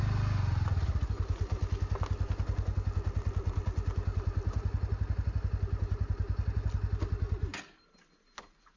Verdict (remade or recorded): recorded